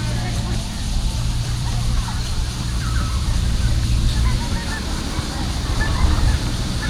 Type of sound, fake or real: fake